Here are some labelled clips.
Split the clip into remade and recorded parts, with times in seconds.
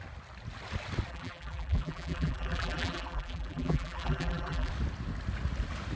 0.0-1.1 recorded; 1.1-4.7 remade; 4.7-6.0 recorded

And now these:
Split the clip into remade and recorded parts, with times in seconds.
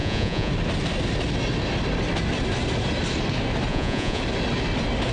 0.0-0.5 remade; 0.5-3.7 recorded; 3.7-4.2 remade; 4.2-5.1 recorded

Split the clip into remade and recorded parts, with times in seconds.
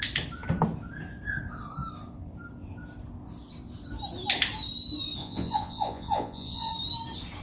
0.0-5.2 recorded; 5.2-6.7 remade; 6.7-7.4 recorded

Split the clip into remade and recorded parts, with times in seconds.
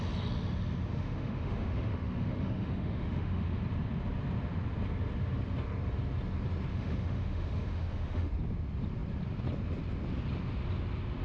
0.0-0.9 recorded; 0.9-3.6 remade; 3.6-6.7 recorded; 6.7-8.3 remade; 8.3-11.2 recorded